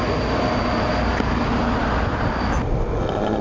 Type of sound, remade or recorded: recorded